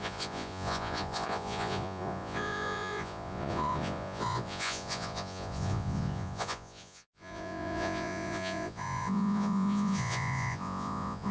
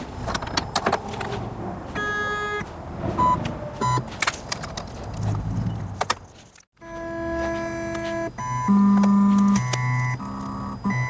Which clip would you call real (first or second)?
second